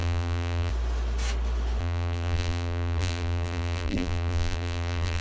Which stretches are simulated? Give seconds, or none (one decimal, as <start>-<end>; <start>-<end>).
0.0-0.7; 1.8-5.2